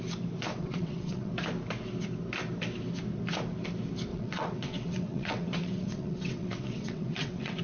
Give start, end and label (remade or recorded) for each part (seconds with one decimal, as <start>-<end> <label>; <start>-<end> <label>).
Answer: 0.0-0.5 recorded; 0.5-1.3 remade; 1.3-4.1 recorded; 4.1-7.6 remade